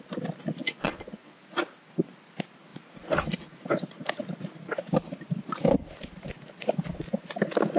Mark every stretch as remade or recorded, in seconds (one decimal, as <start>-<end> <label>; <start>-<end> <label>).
0.0-0.6 recorded; 0.6-1.4 remade; 1.4-7.8 recorded